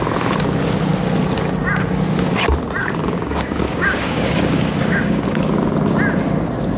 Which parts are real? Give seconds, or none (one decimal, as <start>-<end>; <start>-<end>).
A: 0.0-2.8; 5.4-6.8

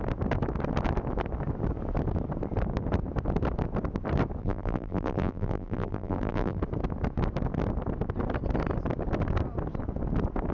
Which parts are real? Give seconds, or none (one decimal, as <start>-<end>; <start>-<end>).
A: 0.0-4.4; 6.6-10.5

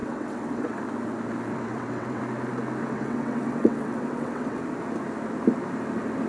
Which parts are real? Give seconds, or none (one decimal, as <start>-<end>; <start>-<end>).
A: 0.8-1.5; 2.2-2.8; 4.6-6.3